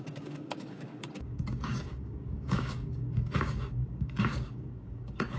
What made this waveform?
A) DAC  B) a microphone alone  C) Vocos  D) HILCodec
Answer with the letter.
A